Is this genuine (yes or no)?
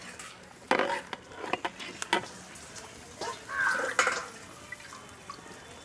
yes